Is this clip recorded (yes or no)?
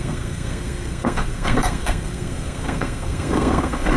no